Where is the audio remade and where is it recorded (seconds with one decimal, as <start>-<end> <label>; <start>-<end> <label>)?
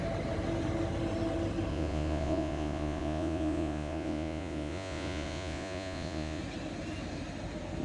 0.0-1.7 recorded; 1.7-6.4 remade; 6.4-7.8 recorded